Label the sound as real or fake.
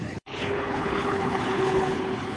fake